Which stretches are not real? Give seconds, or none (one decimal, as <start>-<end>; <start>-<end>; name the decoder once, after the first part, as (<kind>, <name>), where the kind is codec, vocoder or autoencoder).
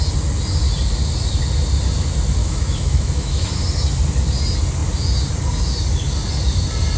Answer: 2.4-3.5 (autoencoder, DAC-VAE)